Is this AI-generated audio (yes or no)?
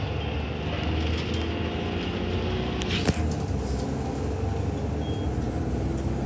no